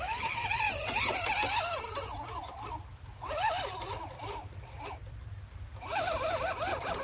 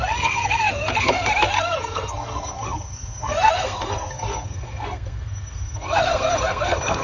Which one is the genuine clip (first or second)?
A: first